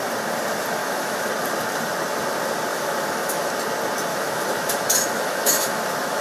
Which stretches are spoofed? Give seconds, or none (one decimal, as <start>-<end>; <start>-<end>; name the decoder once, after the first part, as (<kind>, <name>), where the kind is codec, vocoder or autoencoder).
0.8-1.3 (autoencoder, DAC-VAE); 2.7-3.5; 4.1-6.2